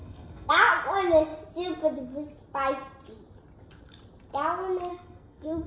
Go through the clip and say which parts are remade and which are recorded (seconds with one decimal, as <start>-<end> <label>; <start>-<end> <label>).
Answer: 0.0-0.5 remade; 0.5-4.9 recorded; 4.9-5.7 remade